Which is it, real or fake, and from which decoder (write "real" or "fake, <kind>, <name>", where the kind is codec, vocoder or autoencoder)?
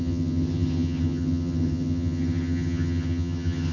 fake, vocoder, HiFi-GAN